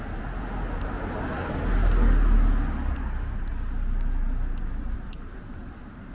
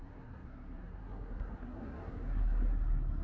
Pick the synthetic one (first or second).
second